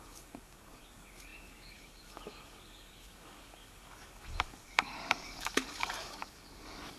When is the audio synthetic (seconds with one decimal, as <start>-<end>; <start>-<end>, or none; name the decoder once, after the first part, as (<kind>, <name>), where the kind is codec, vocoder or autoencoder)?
0.0-7.0 (codec, DAC)